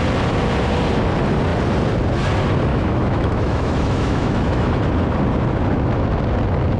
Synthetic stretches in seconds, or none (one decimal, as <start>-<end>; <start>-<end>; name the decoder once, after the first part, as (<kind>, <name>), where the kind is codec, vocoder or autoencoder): 2.7-4.7 (autoencoder, DAC-VAE)